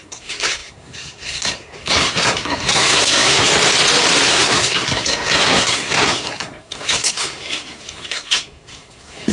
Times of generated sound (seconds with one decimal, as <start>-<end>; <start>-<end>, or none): 0.0-3.5; 4.3-9.3